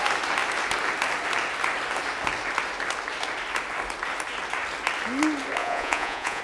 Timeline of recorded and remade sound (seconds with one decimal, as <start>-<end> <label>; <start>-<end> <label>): 0.0-5.6 recorded; 5.6-6.4 remade